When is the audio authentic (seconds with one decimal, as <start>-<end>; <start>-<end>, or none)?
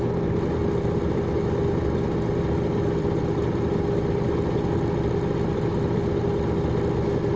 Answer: 0.0-7.4